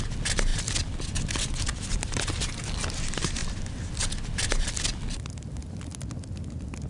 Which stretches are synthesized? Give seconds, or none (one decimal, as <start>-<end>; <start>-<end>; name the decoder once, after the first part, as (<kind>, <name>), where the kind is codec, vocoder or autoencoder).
0.5-2.7 (vocoder, BigVGAN v2); 3.4-4.1